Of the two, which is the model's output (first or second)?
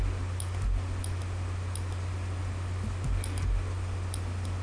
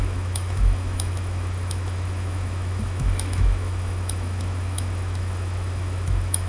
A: second